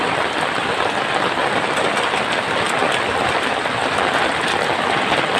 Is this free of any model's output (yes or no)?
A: yes